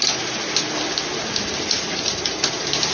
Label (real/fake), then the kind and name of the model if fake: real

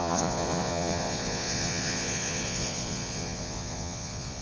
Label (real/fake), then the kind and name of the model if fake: fake, vocoder, Vocos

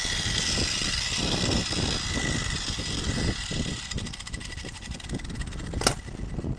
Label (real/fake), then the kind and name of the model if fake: real